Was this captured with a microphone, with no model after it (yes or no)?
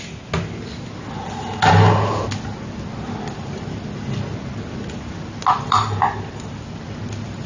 yes